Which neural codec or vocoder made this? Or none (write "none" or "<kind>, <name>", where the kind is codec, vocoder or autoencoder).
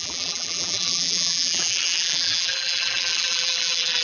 vocoder, BigVGAN v2